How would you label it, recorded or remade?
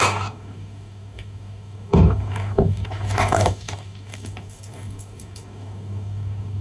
remade